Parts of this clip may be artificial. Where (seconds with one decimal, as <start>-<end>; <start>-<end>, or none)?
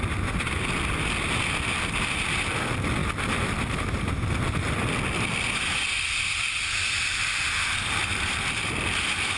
8.0-8.7